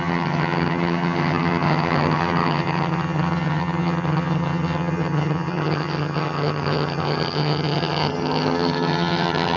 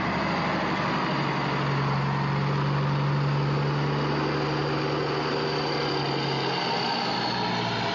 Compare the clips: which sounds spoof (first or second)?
first